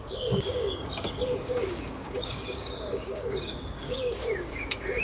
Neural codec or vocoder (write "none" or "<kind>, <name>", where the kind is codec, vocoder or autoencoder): codec, DAC